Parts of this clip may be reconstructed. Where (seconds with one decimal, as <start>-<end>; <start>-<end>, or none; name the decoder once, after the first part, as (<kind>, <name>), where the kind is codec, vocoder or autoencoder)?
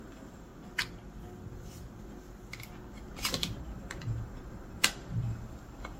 0.0-0.5 (vocoder, BigVGAN v2); 3.6-6.0